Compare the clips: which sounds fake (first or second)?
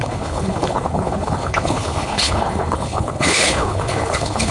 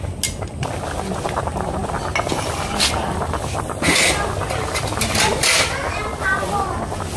first